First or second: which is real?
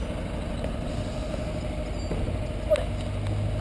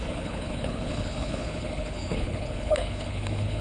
first